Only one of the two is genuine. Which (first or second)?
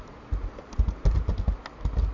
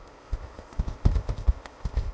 first